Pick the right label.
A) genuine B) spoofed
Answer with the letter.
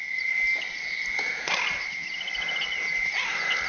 A